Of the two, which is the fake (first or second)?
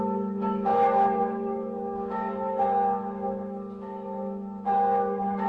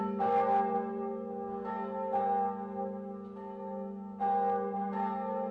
first